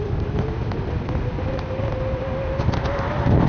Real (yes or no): yes